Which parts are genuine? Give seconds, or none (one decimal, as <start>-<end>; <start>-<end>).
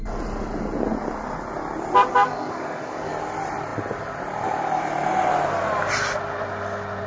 0.0-2.1; 3.1-7.1